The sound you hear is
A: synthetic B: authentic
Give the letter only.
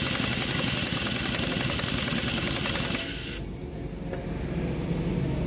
B